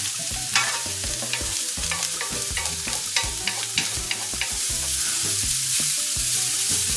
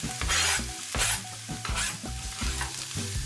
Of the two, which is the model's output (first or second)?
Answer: first